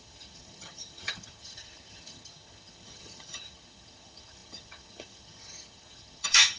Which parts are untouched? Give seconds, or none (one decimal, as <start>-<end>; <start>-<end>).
none